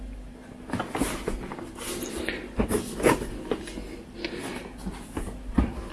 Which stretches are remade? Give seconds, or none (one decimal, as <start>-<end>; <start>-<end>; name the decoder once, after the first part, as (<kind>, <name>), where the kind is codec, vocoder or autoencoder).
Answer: none